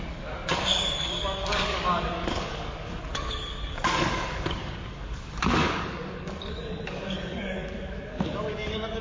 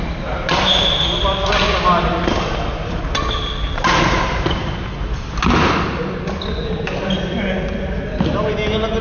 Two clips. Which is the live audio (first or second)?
second